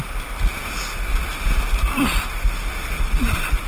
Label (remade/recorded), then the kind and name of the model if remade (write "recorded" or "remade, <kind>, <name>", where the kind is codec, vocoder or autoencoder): recorded